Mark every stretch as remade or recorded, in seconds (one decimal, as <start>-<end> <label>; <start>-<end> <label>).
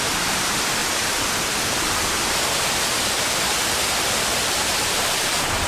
0.0-0.8 remade; 0.8-4.2 recorded; 4.2-5.7 remade